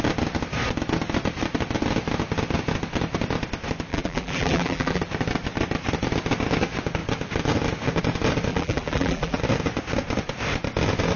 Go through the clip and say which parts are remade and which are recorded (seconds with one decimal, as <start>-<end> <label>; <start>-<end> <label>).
0.0-3.9 recorded; 3.9-5.0 remade; 5.0-8.5 recorded; 8.5-9.4 remade; 9.4-11.2 recorded